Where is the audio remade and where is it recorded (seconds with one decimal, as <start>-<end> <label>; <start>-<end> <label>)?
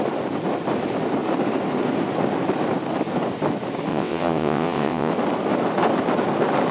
0.0-3.9 recorded; 3.9-5.1 remade; 5.1-6.7 recorded